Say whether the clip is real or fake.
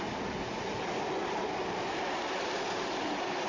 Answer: real